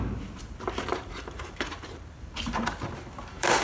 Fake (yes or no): yes